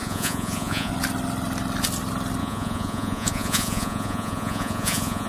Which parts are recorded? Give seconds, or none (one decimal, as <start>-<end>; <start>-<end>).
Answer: 0.9-2.4